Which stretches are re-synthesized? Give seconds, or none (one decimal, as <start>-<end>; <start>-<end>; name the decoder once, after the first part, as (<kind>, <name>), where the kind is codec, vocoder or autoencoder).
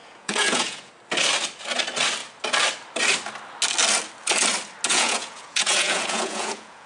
0.0-0.9 (vocoder, Vocos); 4.9-6.9